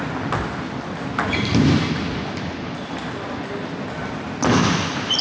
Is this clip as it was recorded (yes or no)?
yes